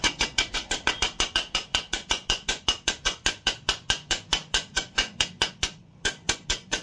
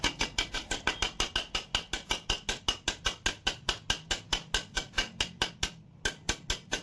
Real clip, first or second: second